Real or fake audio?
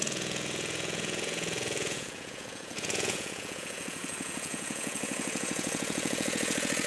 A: fake